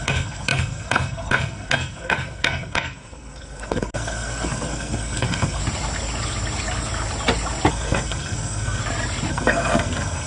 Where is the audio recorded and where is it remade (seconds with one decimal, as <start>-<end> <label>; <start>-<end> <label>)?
0.0-5.6 remade; 5.6-7.7 recorded; 7.7-8.8 remade; 8.8-9.3 recorded; 9.3-10.3 remade